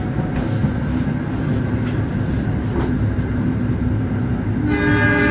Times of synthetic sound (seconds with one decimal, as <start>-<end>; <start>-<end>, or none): none